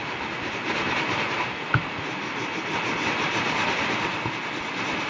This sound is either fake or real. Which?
real